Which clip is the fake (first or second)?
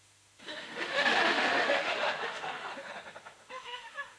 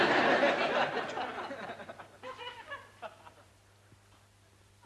first